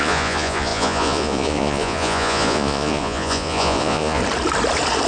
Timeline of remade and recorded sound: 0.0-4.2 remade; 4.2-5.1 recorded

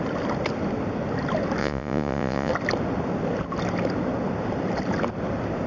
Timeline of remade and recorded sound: 0.0-1.6 recorded; 1.6-2.5 remade; 2.5-5.7 recorded

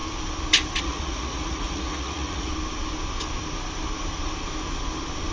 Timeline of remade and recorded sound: 0.0-0.8 recorded; 0.8-2.5 remade; 2.5-5.3 recorded

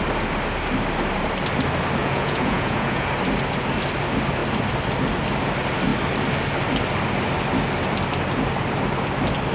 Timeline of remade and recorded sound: 0.0-2.0 recorded; 2.0-3.1 remade; 3.1-9.5 recorded

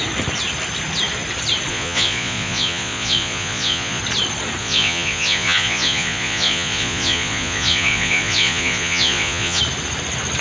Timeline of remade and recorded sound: 0.0-1.7 recorded; 1.7-4.0 remade; 4.0-4.6 recorded; 4.6-9.6 remade; 9.6-10.4 recorded

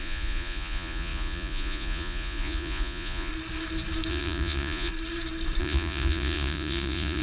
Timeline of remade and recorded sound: 0.0-3.3 remade; 3.3-4.1 recorded; 4.1-4.9 remade; 4.9-5.6 recorded; 5.6-7.2 remade